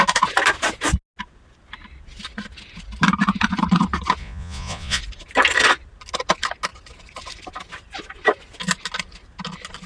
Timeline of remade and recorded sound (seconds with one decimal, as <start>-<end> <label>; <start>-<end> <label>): 0.0-4.2 recorded; 4.2-5.0 remade; 5.0-9.9 recorded